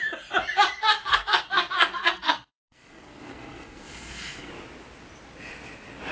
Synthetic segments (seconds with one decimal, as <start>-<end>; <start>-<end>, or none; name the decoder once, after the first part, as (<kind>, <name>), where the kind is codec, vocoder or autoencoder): 0.8-4.5 (codec, SNAC)